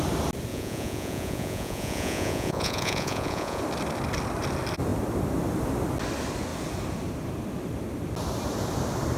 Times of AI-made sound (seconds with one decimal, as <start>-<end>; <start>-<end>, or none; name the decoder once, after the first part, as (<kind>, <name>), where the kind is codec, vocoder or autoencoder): 0.5-3.6 (vocoder, Vocos)